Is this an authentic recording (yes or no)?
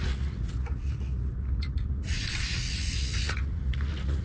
no